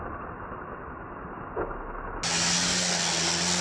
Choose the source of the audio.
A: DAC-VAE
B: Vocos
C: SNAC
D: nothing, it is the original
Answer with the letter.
D